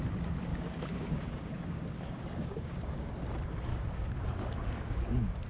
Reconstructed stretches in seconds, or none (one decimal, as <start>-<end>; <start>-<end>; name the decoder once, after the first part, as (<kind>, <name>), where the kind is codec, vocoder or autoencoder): 0.5-3.1 (codec, DAC); 3.7-5.5